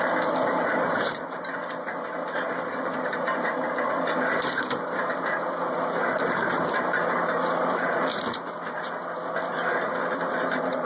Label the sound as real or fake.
fake